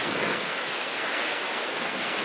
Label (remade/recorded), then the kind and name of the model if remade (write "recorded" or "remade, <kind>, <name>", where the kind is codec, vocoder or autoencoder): remade, codec, SNAC